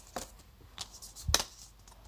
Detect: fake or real real